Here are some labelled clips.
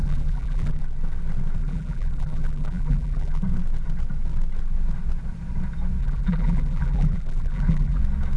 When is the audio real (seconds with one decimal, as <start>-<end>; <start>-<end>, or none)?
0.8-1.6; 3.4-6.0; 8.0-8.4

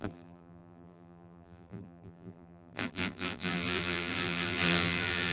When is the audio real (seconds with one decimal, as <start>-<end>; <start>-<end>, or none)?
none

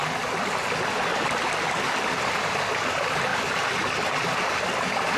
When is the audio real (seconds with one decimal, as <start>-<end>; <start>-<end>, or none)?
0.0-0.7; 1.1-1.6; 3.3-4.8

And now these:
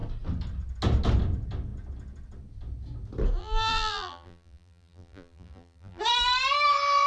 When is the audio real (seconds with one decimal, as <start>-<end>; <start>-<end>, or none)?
0.0-3.4; 6.0-7.1

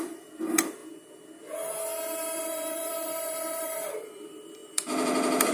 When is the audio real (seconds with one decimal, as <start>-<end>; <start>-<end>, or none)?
0.8-2.4

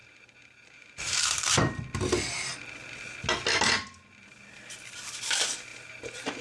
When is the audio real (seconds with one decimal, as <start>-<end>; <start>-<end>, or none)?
1.6-5.7